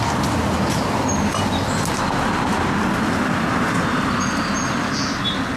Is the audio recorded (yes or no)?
yes